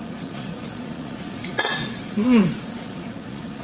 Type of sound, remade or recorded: remade